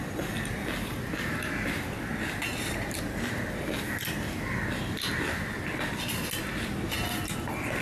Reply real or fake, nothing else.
real